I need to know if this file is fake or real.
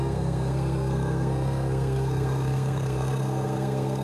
fake